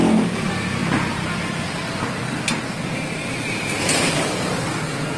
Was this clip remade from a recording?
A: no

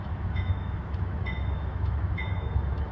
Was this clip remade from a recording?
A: yes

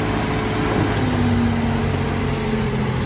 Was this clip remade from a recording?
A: no